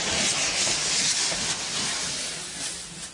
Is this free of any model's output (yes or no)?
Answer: yes